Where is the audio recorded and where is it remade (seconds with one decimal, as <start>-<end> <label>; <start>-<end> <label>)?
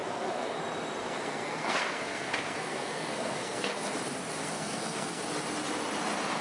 0.0-0.6 remade; 0.6-1.0 recorded; 1.0-4.0 remade; 4.0-4.4 recorded; 4.4-5.2 remade; 5.2-6.4 recorded